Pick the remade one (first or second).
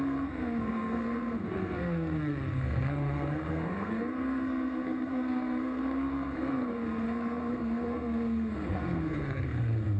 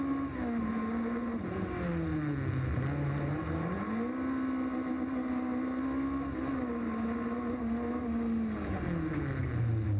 first